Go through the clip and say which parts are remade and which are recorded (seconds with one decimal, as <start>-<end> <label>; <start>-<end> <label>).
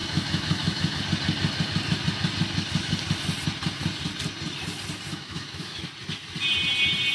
0.0-1.0 remade; 1.0-5.1 recorded; 5.1-5.8 remade; 5.8-7.1 recorded